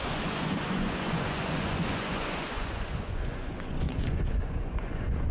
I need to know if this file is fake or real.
fake